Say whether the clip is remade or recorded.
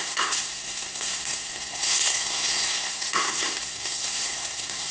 remade